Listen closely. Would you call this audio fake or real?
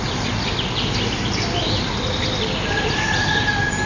real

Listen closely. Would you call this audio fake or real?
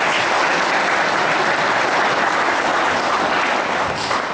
real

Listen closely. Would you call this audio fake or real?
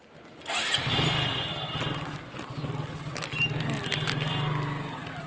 real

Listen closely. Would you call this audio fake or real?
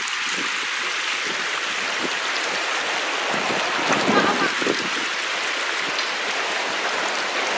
real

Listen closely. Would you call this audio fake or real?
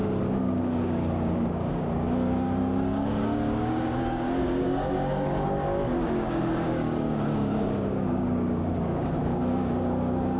fake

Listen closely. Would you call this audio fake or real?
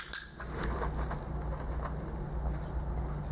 real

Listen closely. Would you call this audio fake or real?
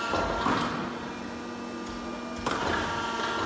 real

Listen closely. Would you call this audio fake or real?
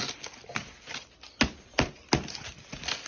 real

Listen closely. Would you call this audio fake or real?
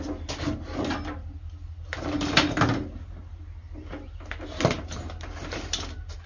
real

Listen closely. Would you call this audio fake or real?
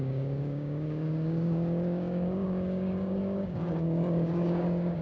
fake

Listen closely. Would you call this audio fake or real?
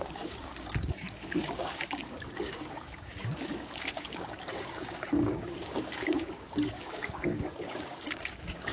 fake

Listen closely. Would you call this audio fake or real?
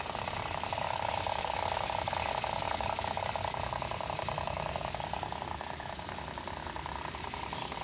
fake